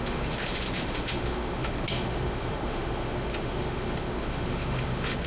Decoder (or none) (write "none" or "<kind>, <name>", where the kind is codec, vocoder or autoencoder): autoencoder, DAC-VAE